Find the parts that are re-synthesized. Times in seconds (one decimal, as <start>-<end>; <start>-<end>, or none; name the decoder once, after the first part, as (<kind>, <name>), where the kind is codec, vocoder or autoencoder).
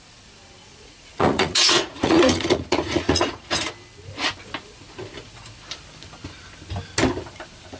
0.7-3.7 (vocoder, Vocos)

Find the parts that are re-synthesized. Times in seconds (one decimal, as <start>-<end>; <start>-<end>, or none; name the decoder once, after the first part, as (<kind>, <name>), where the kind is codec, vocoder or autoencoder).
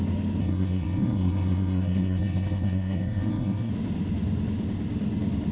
0.4-3.7 (codec, SNAC)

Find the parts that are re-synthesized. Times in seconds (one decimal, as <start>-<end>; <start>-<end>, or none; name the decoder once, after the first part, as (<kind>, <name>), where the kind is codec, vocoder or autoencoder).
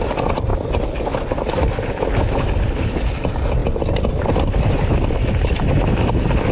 none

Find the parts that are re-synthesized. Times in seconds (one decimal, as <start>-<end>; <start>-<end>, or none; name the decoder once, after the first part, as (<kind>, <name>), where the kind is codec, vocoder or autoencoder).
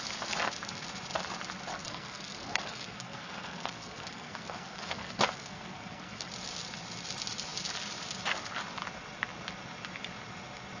1.7-6.3 (codec, SNAC)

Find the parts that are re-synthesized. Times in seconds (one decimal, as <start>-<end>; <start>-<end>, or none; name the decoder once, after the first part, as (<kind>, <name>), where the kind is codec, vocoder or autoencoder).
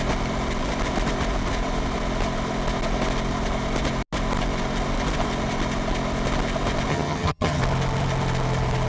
6.9-7.6 (vocoder, HiFi-GAN)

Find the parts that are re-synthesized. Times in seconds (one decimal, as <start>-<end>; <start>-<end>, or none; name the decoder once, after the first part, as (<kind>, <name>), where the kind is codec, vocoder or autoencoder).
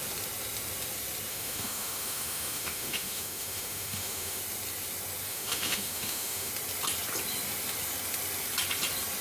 1.3-4.4 (autoencoder, DAC-VAE); 5.3-6.5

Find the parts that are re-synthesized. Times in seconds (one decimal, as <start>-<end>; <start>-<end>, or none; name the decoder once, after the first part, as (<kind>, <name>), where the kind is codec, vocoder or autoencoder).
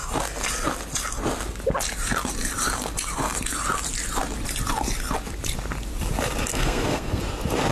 6.5-7.2 (codec, SNAC)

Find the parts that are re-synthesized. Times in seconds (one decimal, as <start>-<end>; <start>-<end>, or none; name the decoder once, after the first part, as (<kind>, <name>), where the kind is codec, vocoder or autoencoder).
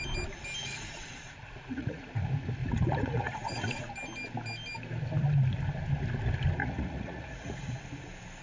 0.6-2.1 (vocoder, Vocos); 2.6-3.9; 6.6-7.8